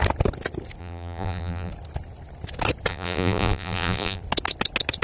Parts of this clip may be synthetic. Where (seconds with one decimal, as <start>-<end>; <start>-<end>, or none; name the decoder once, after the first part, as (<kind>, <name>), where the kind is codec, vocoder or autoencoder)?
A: 0.8-1.7 (vocoder, BigVGAN v2); 2.9-4.2